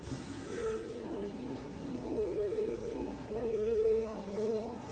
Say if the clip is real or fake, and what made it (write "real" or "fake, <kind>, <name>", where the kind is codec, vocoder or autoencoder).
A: fake, codec, SNAC